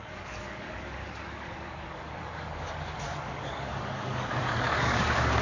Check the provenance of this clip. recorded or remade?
remade